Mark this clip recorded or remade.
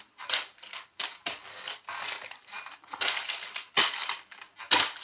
remade